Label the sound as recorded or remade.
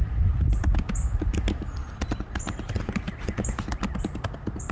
recorded